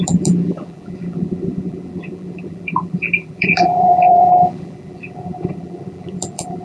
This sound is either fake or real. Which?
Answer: fake